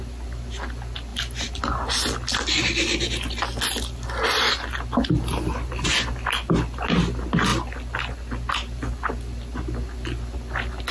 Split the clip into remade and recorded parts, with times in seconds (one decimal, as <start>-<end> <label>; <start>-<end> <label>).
0.0-10.9 recorded